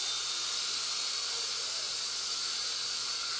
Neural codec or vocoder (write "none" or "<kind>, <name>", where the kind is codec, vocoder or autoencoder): none